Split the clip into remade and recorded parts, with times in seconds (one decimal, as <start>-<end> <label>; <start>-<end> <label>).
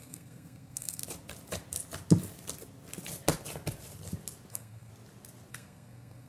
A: 0.0-1.0 remade; 1.0-4.5 recorded; 4.5-4.9 remade; 4.9-5.5 recorded; 5.5-6.3 remade